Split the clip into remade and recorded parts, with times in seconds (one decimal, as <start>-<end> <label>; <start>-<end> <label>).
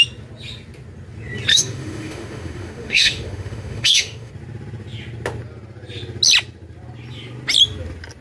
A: 0.0-1.5 recorded; 1.5-4.3 remade; 4.3-8.2 recorded